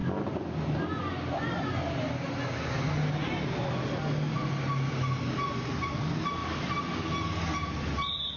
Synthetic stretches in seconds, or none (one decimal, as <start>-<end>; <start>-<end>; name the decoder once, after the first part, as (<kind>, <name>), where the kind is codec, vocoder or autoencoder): none